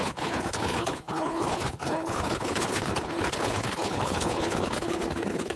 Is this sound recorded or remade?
remade